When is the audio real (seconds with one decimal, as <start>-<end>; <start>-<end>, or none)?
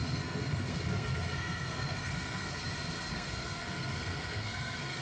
2.6-3.1